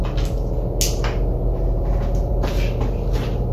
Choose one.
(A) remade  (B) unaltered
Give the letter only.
B